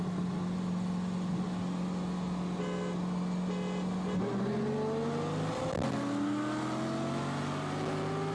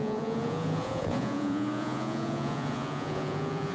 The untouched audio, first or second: first